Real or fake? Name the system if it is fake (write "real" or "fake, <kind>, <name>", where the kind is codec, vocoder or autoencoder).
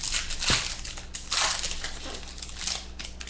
real